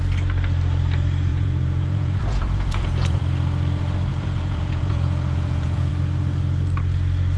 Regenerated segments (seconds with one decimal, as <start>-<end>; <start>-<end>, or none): 1.3-3.2; 4.1-5.9